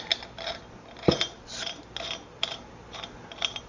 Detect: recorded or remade recorded